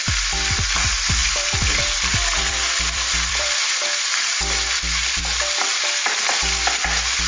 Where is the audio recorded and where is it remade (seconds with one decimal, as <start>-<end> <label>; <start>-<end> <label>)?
0.0-1.2 recorded; 1.2-5.2 remade; 5.2-7.3 recorded